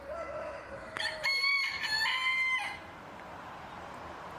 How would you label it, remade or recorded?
recorded